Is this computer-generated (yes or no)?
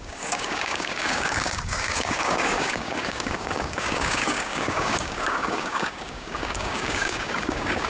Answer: yes